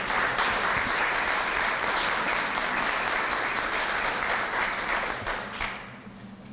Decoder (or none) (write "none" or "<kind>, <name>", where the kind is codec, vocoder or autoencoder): none